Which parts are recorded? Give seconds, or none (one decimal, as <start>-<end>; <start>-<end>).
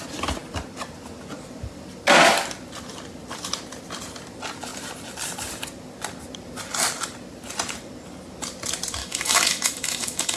0.0-9.0